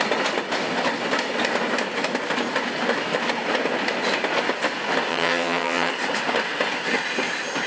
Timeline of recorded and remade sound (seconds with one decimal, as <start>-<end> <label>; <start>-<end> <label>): 0.0-5.1 recorded; 5.1-5.9 remade; 5.9-7.7 recorded